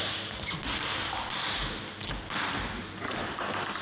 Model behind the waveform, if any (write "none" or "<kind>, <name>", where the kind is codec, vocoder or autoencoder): none